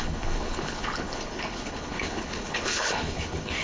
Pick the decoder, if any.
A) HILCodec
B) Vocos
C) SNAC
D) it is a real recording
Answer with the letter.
A